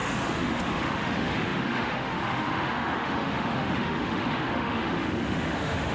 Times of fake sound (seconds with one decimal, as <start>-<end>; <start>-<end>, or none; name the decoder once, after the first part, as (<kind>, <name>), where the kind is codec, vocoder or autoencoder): 0.0-5.9 (autoencoder, DAC-VAE)